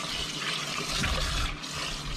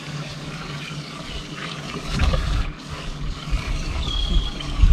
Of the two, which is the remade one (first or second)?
second